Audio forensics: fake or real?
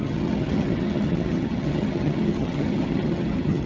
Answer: fake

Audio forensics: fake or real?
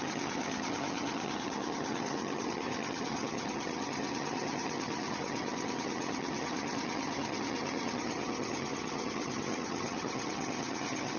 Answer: fake